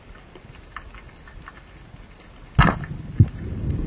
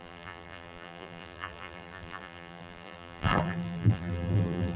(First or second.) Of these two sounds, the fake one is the second